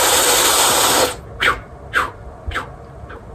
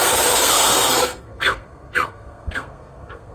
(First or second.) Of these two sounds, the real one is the first